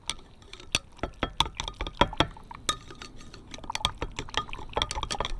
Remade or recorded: recorded